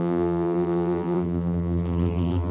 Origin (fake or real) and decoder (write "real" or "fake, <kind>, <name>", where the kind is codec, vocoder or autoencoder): fake, vocoder, BigVGAN v2